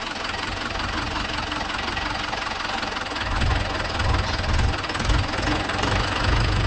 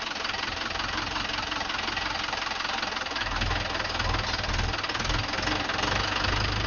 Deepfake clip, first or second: first